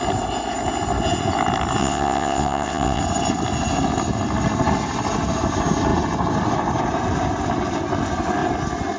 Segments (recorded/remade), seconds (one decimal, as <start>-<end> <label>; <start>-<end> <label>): 0.0-1.8 recorded; 1.8-3.0 remade; 3.0-9.0 recorded

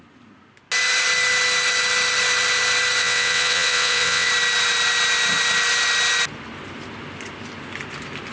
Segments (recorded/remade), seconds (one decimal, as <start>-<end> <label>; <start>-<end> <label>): 0.0-3.0 recorded; 3.0-4.3 remade; 4.3-8.3 recorded

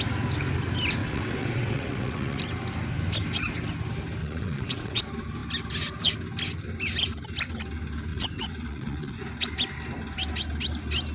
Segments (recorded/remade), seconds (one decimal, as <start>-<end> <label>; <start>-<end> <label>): 0.0-1.0 recorded; 1.0-2.4 remade; 2.4-4.2 recorded; 4.2-5.0 remade; 5.0-8.1 recorded; 8.1-9.2 remade; 9.2-11.1 recorded

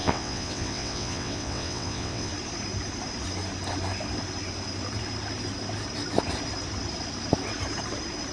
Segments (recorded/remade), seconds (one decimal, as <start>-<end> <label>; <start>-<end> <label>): 0.0-2.3 remade; 2.3-8.3 recorded

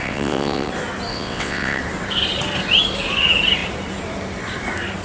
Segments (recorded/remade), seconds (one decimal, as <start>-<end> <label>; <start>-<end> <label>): 0.0-0.7 remade; 0.7-1.1 recorded; 1.1-1.8 remade; 1.8-5.0 recorded

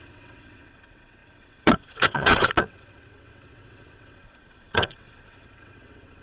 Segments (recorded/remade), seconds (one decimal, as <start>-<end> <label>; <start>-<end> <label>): 0.0-6.2 remade